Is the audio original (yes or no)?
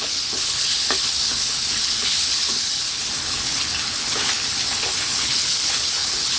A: no